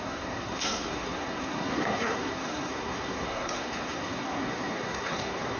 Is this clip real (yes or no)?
no